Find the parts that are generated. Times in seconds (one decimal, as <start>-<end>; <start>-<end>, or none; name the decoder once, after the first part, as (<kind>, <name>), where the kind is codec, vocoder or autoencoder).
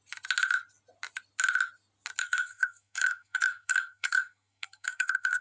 2.2-5.4 (codec, SNAC)